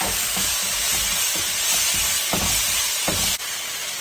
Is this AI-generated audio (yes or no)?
no